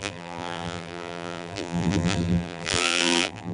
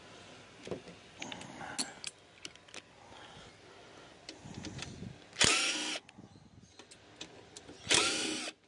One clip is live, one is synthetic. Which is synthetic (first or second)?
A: first